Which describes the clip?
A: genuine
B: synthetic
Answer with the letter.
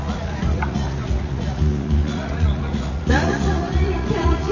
B